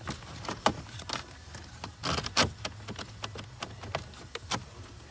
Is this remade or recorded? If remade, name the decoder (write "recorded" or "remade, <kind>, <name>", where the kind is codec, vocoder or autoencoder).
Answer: recorded